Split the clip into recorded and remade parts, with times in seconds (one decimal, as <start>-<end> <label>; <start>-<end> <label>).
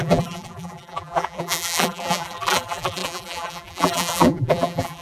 0.0-5.0 remade